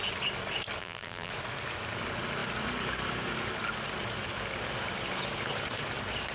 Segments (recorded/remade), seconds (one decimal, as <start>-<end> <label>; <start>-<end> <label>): 0.0-0.8 recorded; 0.8-1.3 remade; 1.3-6.3 recorded